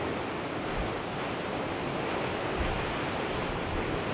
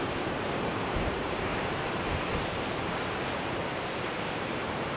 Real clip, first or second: first